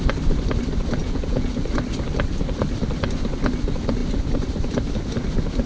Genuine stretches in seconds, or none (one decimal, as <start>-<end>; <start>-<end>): 0.0-1.0; 1.5-5.7